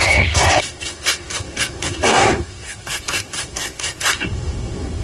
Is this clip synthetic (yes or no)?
yes